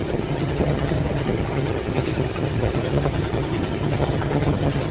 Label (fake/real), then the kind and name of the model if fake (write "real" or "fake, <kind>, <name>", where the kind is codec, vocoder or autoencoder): fake, vocoder, HiFi-GAN